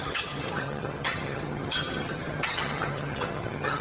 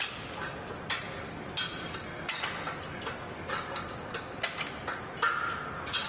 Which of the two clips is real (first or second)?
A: second